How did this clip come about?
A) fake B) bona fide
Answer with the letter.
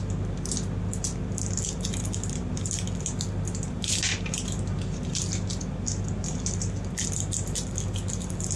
B